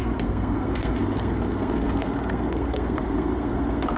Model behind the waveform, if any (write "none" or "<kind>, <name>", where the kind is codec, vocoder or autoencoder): codec, SNAC